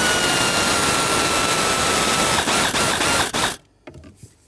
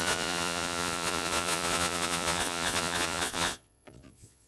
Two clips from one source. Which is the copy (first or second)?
second